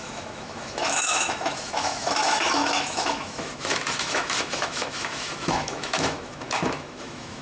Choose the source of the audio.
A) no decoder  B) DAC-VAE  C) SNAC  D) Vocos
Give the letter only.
B